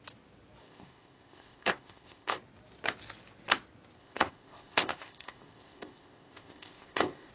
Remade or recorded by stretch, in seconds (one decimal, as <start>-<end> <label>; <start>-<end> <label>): 0.0-0.6 recorded; 0.6-2.4 remade; 2.4-4.0 recorded; 4.0-7.3 remade